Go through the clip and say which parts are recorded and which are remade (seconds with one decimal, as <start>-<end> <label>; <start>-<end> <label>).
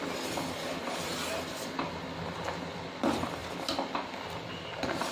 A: 0.0-5.1 recorded